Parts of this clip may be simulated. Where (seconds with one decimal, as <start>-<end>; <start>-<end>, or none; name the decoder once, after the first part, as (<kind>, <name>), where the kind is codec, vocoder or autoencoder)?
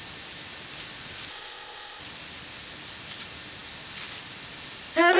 1.3-2.0 (codec, ZipCodec)